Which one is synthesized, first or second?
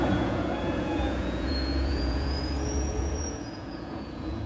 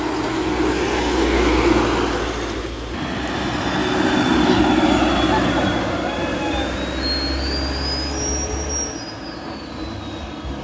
first